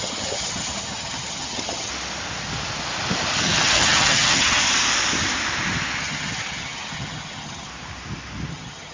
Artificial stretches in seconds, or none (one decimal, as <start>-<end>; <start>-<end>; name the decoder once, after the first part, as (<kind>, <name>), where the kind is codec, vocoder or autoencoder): 0.0-1.9 (vocoder, HiFi-GAN); 3.4-4.6; 6.0-7.7; 8.5-8.9